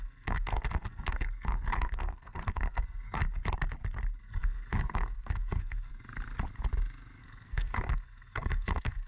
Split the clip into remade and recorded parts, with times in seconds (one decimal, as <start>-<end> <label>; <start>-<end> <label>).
0.0-3.2 remade; 3.2-4.2 recorded; 4.2-5.9 remade; 5.9-7.2 recorded; 7.2-9.1 remade